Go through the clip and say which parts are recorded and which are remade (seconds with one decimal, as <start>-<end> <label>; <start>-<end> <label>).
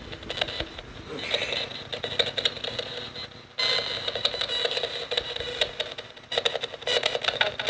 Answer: 0.0-7.7 recorded